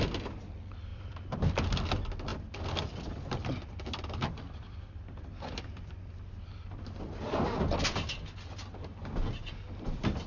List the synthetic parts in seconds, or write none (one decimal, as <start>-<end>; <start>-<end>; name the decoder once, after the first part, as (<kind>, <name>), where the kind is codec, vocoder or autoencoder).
0.9-1.5 (vocoder, BigVGAN v2); 2.3-7.0

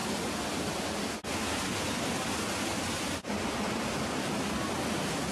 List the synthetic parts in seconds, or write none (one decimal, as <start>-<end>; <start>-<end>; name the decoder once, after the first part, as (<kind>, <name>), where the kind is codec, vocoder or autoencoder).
none

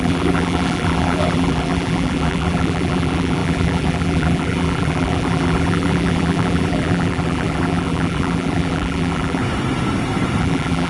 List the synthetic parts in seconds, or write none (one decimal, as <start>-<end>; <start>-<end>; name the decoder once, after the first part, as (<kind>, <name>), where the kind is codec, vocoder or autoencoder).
0.0-9.4 (vocoder, BigVGAN v2); 10.4-10.9